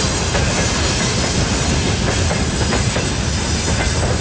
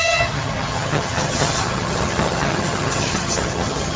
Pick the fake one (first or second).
second